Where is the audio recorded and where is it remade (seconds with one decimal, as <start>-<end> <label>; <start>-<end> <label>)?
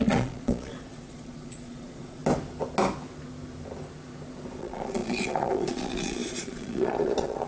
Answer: 0.0-2.2 remade; 2.2-4.6 recorded; 4.6-7.5 remade